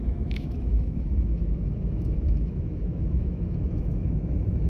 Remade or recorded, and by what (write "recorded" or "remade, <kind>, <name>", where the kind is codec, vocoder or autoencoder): remade, autoencoder, DAC-VAE